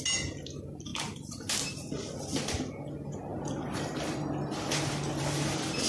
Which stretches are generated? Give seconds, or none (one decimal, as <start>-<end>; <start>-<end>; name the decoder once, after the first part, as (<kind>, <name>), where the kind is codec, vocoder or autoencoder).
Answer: none